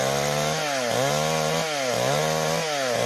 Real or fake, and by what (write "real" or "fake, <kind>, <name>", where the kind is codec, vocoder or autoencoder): real